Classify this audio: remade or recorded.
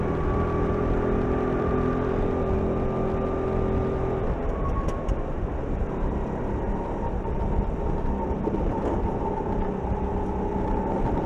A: recorded